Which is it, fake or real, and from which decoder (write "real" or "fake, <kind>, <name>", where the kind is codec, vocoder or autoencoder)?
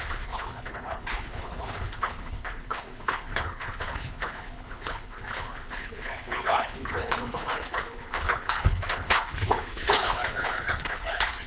fake, codec, HILCodec